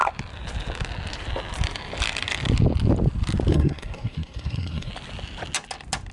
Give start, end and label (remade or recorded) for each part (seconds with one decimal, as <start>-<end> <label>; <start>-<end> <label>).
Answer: 0.0-3.5 recorded; 3.5-4.9 remade; 4.9-6.1 recorded